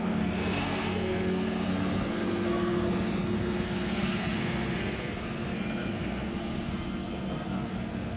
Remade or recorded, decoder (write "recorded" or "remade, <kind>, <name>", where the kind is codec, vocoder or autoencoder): remade, codec, SNAC